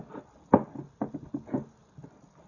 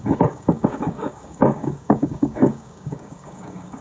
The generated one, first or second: second